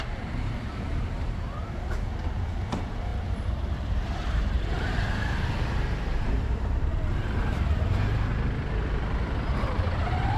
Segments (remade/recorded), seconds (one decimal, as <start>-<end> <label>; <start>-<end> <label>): 0.0-1.6 remade; 1.6-2.3 recorded; 2.3-8.3 remade; 8.3-9.5 recorded; 9.5-10.4 remade